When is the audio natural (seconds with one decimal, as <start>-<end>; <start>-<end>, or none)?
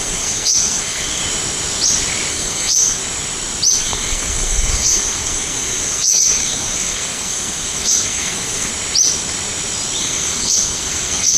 1.2-2.3; 3.0-3.8; 8.7-10.0